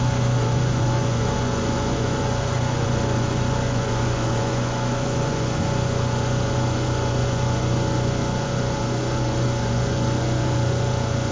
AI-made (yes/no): yes